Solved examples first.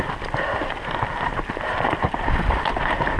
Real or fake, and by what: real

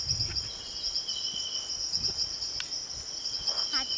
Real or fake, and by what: real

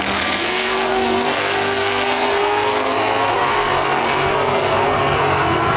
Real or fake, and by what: fake, codec, SNAC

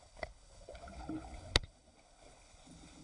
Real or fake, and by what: fake, codec, HILCodec